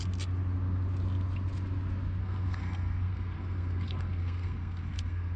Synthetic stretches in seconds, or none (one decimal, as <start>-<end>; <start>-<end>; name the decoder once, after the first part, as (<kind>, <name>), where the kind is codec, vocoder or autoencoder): 2.2-5.4 (codec, SNAC)